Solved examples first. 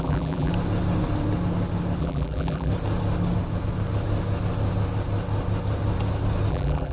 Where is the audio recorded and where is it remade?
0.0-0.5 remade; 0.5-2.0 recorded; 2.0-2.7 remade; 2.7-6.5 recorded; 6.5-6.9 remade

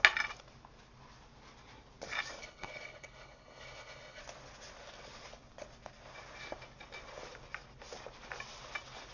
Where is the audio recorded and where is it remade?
0.0-2.4 recorded; 2.4-4.2 remade; 4.2-9.1 recorded

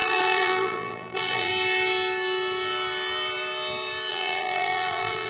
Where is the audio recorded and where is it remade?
0.0-1.5 remade; 1.5-4.1 recorded; 4.1-5.3 remade

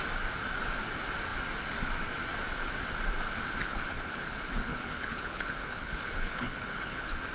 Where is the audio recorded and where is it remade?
0.0-3.6 recorded; 3.6-7.3 remade

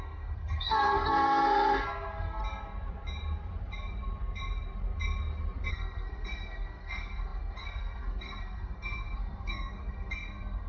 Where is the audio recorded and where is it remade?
0.0-2.4 remade; 2.4-5.7 recorded; 5.7-10.7 remade

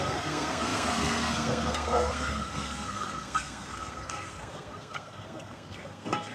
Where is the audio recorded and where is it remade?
0.0-6.3 remade

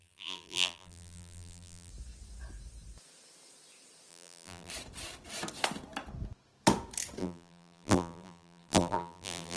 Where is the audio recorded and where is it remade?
0.0-1.9 remade; 1.9-4.1 recorded; 4.1-4.7 remade; 4.7-7.2 recorded; 7.2-9.6 remade